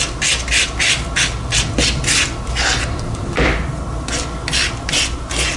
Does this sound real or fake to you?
real